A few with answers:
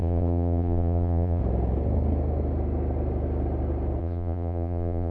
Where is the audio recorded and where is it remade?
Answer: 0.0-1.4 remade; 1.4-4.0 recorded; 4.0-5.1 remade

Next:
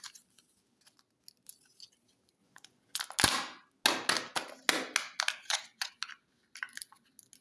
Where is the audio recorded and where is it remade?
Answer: 0.0-2.4 recorded; 2.4-3.0 remade; 3.0-5.4 recorded; 5.4-5.9 remade; 5.9-7.4 recorded

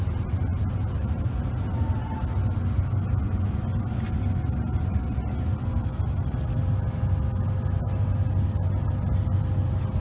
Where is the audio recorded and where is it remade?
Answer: 0.0-10.0 recorded

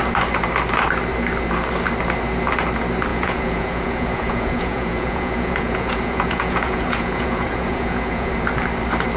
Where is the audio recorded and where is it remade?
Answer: 0.0-3.1 recorded; 3.1-8.3 remade; 8.3-9.2 recorded

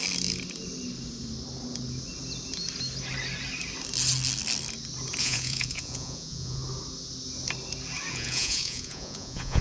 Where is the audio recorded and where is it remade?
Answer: 0.0-5.2 recorded; 5.2-6.6 remade; 6.6-8.1 recorded; 8.1-9.6 remade